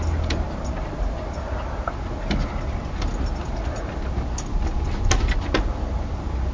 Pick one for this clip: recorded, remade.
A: recorded